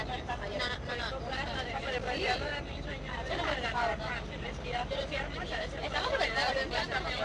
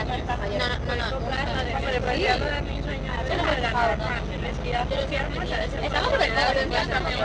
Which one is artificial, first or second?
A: first